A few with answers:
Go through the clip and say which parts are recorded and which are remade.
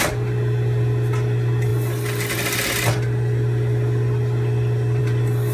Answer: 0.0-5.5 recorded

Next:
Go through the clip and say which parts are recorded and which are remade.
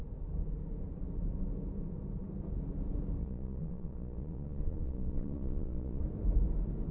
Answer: 0.0-3.2 recorded; 3.2-6.0 remade; 6.0-6.9 recorded